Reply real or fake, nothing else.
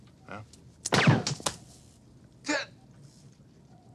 real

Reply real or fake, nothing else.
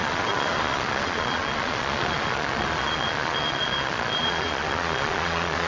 fake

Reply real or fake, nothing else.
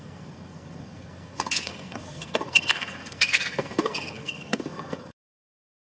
fake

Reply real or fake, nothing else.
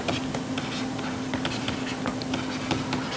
real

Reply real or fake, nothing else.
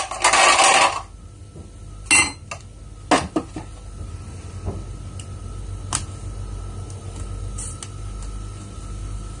real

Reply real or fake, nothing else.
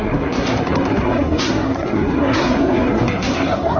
fake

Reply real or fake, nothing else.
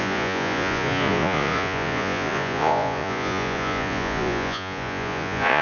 fake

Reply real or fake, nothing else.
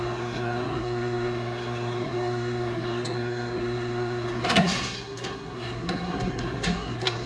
fake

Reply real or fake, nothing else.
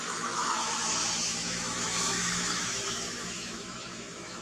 fake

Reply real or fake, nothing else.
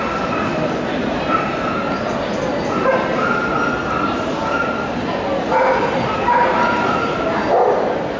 real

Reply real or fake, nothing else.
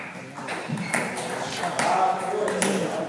real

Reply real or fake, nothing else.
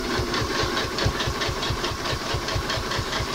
fake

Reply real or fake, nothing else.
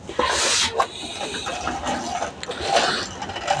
real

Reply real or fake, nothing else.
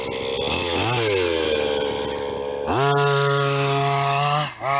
real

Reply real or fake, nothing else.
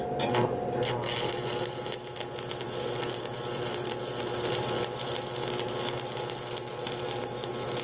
real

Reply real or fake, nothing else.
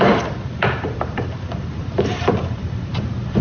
fake